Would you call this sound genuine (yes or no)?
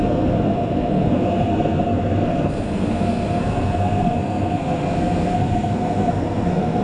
no